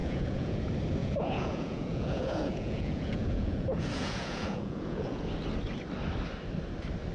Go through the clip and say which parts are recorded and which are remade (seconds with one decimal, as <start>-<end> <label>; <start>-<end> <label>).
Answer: 0.0-0.6 remade; 0.6-1.0 recorded; 1.0-5.3 remade; 5.3-7.1 recorded